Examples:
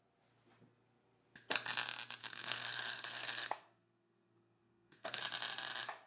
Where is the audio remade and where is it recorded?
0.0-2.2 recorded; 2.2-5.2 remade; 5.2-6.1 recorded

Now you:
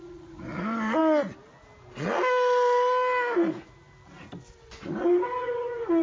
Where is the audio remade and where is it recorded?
0.0-1.0 remade; 1.0-4.5 recorded; 4.5-6.0 remade

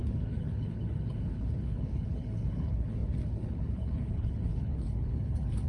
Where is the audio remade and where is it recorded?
0.0-5.7 remade

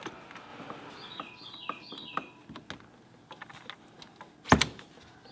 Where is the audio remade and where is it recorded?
0.0-5.3 recorded

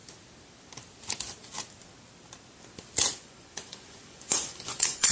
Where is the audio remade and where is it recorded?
0.0-3.1 recorded; 3.1-5.1 remade

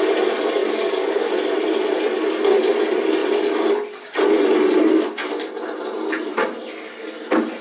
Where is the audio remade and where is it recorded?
0.0-0.6 recorded; 0.6-1.3 remade; 1.3-7.6 recorded